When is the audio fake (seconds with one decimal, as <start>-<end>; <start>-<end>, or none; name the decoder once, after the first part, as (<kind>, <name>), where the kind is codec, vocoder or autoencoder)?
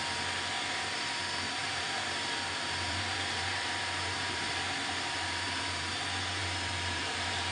1.6-5.9 (vocoder, BigVGAN v2); 6.4-7.5